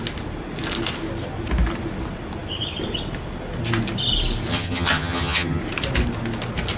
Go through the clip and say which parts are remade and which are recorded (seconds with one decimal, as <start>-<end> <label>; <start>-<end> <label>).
0.0-4.5 recorded; 4.5-5.6 remade; 5.6-6.8 recorded